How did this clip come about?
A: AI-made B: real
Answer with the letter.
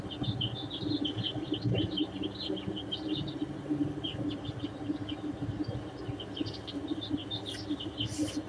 B